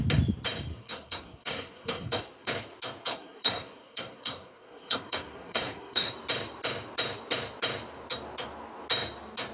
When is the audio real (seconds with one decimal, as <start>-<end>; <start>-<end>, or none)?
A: 0.0-0.7; 2.5-3.1; 6.1-9.5